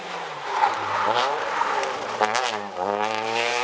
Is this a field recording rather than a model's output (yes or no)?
no